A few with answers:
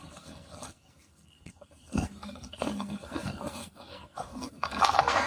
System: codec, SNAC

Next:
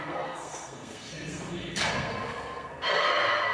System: codec, SNAC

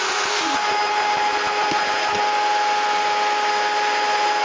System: none